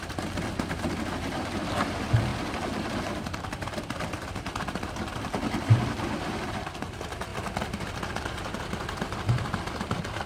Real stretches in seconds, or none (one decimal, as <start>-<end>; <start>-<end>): 2.3-3.5; 7.3-9.3